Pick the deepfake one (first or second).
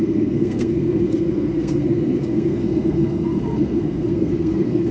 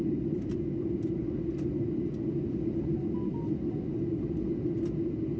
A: first